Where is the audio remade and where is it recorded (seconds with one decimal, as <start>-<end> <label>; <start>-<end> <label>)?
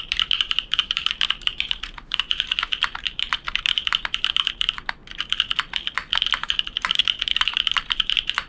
0.0-5.0 remade; 5.0-6.4 recorded; 6.4-8.5 remade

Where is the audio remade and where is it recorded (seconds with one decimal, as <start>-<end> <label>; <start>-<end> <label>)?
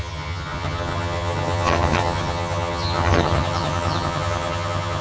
0.0-5.0 remade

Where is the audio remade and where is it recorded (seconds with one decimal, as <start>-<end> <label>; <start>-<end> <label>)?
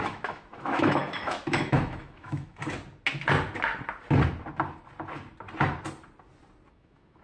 0.0-2.6 remade; 2.6-6.7 recorded; 6.7-7.2 remade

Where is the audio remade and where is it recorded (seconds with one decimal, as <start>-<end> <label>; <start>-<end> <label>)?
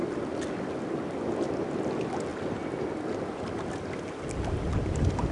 0.0-5.3 recorded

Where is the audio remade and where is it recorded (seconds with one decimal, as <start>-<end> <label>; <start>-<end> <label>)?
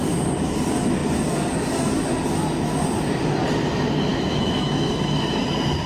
0.0-4.1 recorded; 4.1-5.4 remade; 5.4-5.9 recorded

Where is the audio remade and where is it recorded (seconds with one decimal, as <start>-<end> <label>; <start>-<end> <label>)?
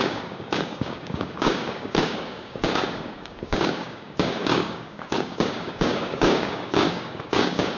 0.0-7.8 remade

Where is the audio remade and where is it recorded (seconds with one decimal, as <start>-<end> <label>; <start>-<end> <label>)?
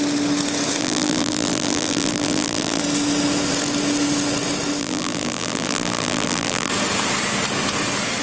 0.0-0.8 recorded; 0.8-2.8 remade; 2.8-4.8 recorded; 4.8-6.7 remade; 6.7-8.2 recorded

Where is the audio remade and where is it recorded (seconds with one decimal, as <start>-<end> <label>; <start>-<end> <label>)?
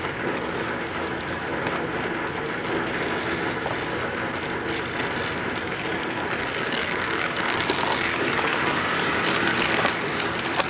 0.0-1.4 remade; 1.4-5.6 recorded; 5.6-10.7 remade